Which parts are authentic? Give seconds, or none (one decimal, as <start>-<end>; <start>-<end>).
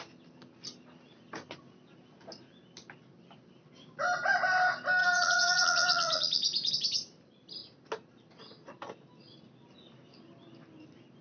0.0-5.0; 6.7-11.2